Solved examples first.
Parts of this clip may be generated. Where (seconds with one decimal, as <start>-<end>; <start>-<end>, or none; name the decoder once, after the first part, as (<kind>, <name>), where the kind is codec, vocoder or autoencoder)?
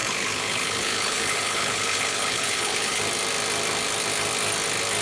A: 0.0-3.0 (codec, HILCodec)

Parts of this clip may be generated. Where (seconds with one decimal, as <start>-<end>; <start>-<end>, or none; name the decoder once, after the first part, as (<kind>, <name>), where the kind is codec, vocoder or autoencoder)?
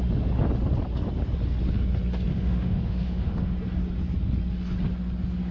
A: 2.3-3.5 (autoencoder, DAC-VAE)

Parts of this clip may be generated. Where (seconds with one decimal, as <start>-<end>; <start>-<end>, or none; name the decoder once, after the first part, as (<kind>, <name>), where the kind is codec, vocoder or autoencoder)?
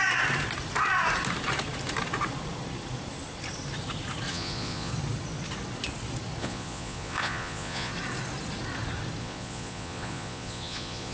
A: 4.3-4.9 (vocoder, Vocos); 6.4-7.9; 9.2-11.1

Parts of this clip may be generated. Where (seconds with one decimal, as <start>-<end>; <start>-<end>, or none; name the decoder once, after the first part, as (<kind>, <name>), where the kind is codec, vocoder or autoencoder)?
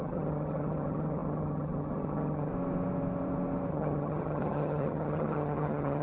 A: 0.0-2.5 (vocoder, HiFi-GAN); 3.7-6.0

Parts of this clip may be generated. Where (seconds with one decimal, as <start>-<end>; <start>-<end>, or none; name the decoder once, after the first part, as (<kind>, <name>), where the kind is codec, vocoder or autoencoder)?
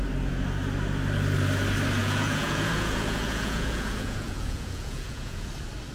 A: 2.0-5.5 (vocoder, Vocos)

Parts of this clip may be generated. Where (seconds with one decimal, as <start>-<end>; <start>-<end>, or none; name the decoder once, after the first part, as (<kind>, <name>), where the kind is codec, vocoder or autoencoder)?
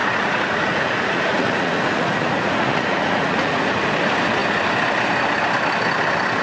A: 0.0-3.8 (vocoder, Vocos)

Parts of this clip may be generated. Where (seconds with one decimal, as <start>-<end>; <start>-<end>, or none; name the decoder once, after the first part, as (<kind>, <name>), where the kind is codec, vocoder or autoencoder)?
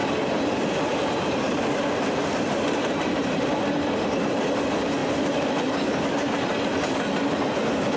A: 0.0-4.1 (vocoder, BigVGAN v2); 5.0-6.1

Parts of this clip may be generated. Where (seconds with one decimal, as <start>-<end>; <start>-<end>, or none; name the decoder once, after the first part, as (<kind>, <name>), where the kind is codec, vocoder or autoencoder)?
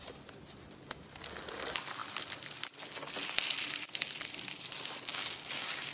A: 5.1-5.9 (codec, DAC)